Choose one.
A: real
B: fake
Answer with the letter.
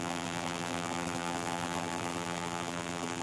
B